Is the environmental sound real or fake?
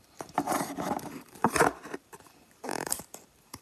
fake